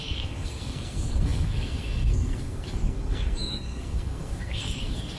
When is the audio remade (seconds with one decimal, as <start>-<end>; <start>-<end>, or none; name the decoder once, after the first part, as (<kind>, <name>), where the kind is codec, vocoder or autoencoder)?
0.0-5.2 (codec, SNAC)